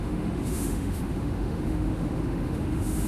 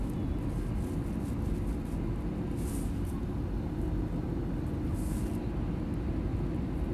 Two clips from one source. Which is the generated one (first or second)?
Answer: first